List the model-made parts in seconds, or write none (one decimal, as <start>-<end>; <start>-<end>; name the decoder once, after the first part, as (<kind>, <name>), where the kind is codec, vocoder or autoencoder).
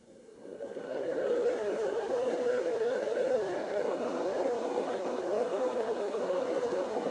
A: 0.0-7.1 (codec, SNAC)